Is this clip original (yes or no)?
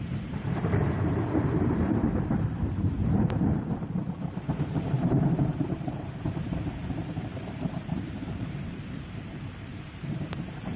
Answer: no